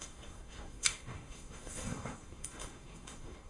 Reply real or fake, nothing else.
fake